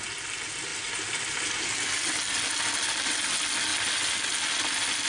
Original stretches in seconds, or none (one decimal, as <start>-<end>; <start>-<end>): 0.0-5.1